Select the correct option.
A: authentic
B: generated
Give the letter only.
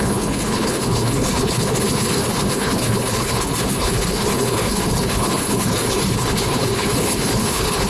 B